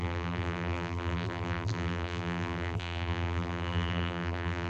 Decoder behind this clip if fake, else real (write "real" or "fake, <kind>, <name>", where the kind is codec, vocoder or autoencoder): fake, vocoder, BigVGAN v2